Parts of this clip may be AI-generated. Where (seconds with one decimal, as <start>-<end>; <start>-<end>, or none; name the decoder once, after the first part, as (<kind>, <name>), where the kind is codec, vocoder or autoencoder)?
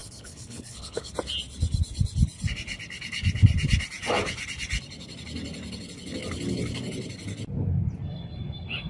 0.0-1.1 (codec, HILCodec)